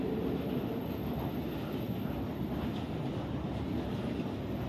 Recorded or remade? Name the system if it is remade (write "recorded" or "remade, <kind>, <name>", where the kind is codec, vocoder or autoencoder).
recorded